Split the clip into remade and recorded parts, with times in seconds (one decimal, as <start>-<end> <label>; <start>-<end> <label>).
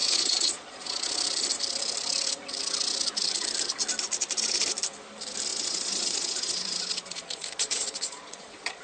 0.0-1.1 remade; 1.1-5.5 recorded; 5.5-8.8 remade